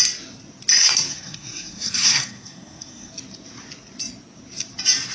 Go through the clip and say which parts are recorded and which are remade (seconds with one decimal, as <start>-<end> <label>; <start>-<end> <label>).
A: 0.0-1.1 recorded; 1.1-3.1 remade; 3.1-5.1 recorded

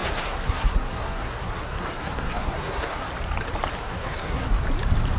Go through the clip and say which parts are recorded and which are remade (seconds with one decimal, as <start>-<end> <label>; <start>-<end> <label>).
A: 0.0-3.1 remade; 3.1-3.8 recorded; 3.8-4.5 remade; 4.5-5.2 recorded